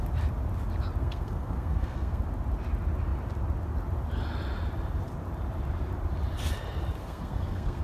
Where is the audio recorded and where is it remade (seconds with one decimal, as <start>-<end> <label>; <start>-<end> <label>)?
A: 0.0-1.0 recorded; 1.0-2.2 remade; 2.2-7.0 recorded; 7.0-7.8 remade